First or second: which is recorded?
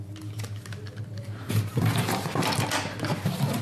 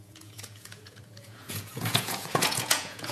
first